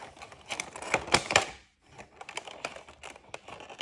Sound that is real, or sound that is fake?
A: real